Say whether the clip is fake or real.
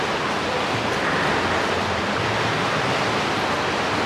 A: real